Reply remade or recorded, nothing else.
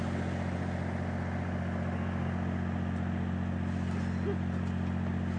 recorded